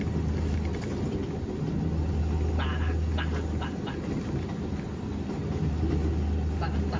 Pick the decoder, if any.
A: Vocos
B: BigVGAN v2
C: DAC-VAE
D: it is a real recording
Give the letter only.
D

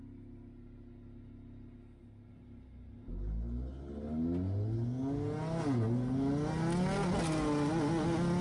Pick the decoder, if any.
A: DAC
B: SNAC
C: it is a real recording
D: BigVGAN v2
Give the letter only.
C